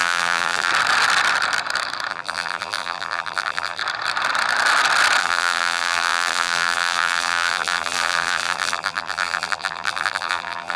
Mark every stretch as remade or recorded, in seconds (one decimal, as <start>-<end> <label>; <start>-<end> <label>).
0.0-0.7 remade; 0.7-2.1 recorded; 2.1-3.8 remade; 3.8-5.2 recorded; 5.2-10.8 remade